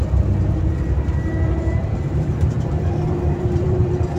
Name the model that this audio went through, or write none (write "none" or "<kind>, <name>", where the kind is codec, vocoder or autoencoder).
vocoder, BigVGAN v2